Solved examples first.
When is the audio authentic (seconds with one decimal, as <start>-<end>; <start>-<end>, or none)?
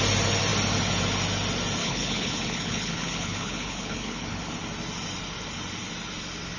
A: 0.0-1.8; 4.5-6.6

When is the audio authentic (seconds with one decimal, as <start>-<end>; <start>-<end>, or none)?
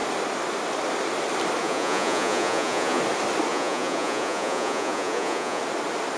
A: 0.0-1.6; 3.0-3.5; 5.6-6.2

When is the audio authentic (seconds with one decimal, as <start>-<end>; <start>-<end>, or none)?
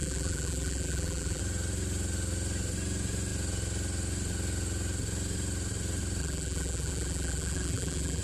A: 1.4-6.2